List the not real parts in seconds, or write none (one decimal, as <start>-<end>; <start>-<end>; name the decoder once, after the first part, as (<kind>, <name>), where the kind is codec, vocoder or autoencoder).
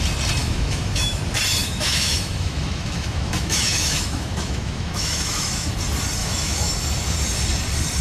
0.4-1.2 (autoencoder, DAC-VAE); 1.6-5.7; 6.2-6.7